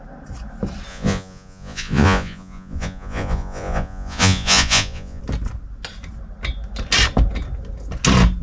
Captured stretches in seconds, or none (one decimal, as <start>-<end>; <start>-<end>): 0.0-0.9; 5.2-8.4